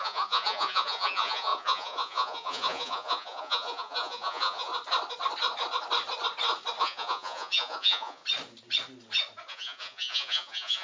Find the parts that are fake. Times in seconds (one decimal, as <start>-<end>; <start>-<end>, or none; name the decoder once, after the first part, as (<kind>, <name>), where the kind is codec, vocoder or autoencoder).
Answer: 0.0-4.7 (vocoder, Vocos); 6.8-8.2; 9.5-10.8